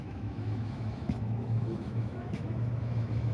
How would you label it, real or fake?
fake